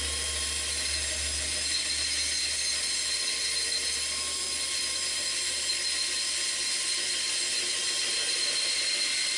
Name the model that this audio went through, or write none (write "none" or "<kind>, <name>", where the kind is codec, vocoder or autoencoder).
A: none